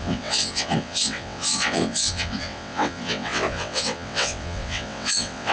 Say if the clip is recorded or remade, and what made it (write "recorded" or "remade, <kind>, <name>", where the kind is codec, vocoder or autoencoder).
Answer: remade, vocoder, WaveNeXt